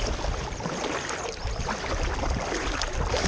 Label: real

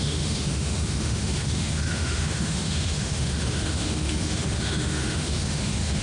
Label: fake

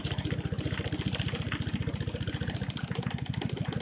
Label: real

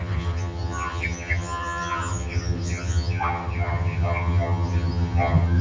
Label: fake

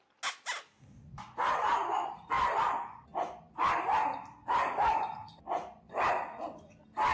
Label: real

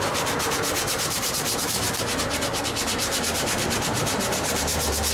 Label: fake